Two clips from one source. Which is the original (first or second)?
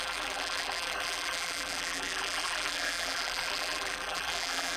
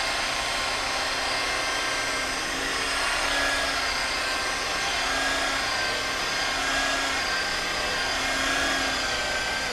second